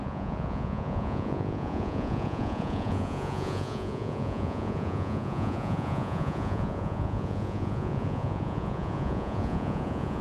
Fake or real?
fake